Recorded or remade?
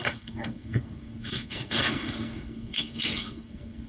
remade